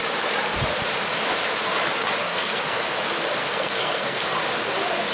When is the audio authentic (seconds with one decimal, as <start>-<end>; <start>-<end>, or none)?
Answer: 0.0-2.2; 2.8-3.4; 4.2-5.1